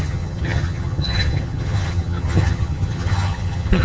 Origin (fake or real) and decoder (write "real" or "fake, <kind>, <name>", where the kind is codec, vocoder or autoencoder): fake, vocoder, HiFi-GAN